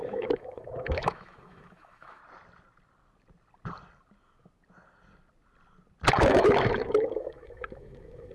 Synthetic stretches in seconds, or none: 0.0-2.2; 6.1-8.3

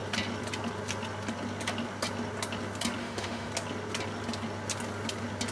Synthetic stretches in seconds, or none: 3.0-3.5

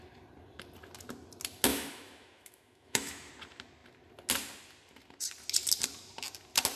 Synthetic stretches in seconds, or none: 1.7-3.3

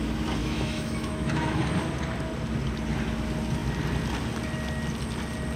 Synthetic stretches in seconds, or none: 0.4-1.6

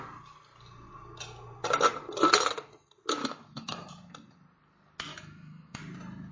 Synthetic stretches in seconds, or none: 3.2-3.9; 5.1-5.8

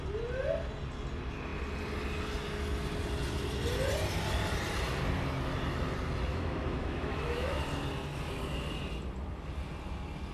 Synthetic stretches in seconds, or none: 6.3-7.6

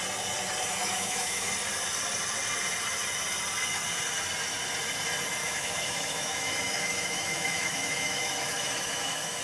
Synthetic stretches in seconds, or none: 0.8-1.5; 5.4-9.4

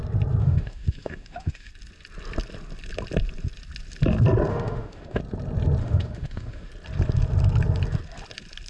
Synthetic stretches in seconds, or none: 0.4-1.7; 4.5-5.2; 5.8-6.7